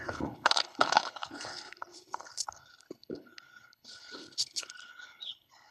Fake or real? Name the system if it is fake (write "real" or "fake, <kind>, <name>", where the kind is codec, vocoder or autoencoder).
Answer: fake, codec, HILCodec